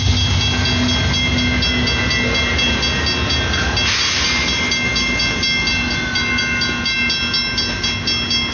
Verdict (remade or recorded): recorded